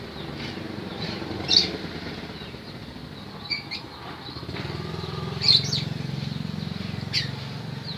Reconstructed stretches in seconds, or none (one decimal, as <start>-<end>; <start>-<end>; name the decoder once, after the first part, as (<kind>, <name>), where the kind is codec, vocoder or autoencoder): 0.9-2.3 (vocoder, BigVGAN v2)